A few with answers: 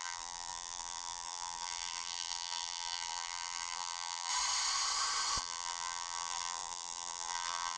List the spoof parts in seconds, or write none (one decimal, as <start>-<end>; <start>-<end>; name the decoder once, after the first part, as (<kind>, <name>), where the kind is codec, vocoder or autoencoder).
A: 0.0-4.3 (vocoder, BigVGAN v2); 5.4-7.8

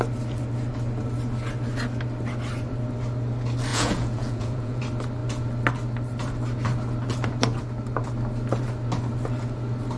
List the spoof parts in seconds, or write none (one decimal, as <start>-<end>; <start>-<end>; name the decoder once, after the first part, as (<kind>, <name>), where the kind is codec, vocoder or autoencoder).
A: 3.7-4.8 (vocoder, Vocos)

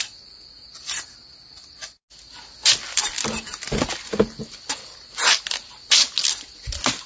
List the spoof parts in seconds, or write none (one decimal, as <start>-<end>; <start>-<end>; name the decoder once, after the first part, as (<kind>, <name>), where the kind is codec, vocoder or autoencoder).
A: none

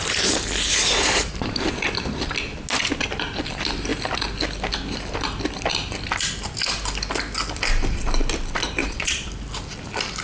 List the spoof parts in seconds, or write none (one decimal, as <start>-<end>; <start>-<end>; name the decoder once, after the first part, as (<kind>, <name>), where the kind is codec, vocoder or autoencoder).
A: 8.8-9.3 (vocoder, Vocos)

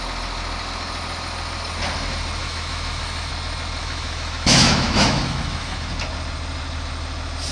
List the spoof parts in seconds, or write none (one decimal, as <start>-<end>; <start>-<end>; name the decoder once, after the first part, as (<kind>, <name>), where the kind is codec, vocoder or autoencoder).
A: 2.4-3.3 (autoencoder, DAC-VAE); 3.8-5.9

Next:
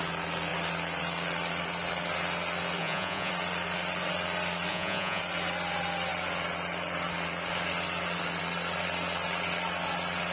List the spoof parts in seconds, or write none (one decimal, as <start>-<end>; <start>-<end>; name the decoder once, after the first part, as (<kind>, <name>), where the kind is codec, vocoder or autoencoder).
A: 2.8-3.3 (vocoder, Vocos); 4.7-5.2

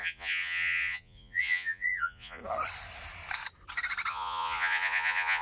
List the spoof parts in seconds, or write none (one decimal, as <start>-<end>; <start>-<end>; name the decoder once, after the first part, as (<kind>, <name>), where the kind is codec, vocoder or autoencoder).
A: 0.0-2.4 (vocoder, Vocos); 4.1-5.4